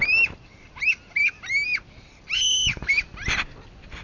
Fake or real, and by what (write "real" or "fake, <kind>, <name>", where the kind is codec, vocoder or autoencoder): real